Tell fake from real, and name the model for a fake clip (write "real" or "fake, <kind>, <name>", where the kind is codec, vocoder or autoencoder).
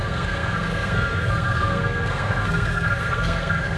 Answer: fake, codec, SNAC